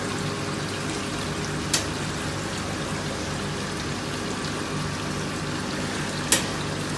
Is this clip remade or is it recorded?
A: recorded